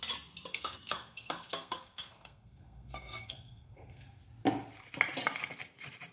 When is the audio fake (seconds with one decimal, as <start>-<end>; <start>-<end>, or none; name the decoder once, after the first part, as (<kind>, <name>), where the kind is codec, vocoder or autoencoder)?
0.5-4.2 (codec, SNAC)